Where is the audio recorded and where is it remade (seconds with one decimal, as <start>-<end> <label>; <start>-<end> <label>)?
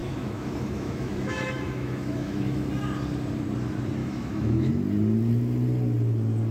0.0-2.7 remade; 2.7-4.0 recorded; 4.0-4.7 remade; 4.7-6.5 recorded